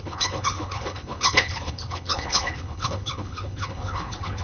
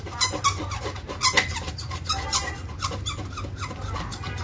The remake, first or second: first